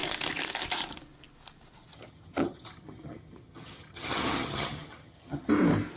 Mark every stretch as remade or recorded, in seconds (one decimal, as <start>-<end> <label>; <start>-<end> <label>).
0.0-1.9 recorded; 1.9-5.5 remade; 5.5-6.0 recorded